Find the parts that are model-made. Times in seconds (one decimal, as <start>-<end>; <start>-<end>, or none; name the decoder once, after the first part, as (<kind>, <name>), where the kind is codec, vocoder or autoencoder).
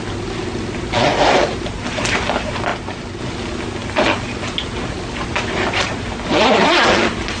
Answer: none